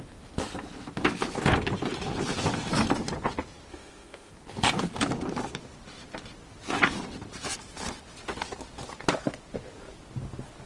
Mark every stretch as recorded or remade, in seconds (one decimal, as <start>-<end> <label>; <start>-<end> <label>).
0.0-3.7 recorded; 3.7-4.3 remade; 4.3-10.7 recorded